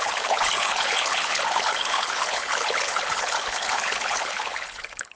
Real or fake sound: fake